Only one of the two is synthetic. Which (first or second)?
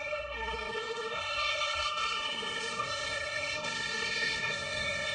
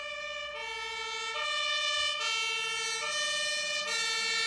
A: first